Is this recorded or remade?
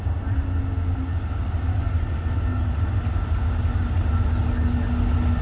recorded